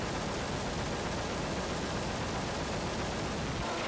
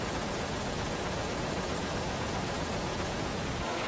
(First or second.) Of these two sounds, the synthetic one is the second